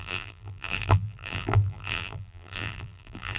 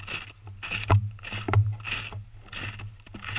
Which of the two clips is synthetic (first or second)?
first